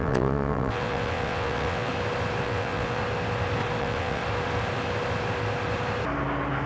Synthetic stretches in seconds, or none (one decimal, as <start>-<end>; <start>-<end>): 0.0-1.9; 2.4-3.0; 3.8-4.2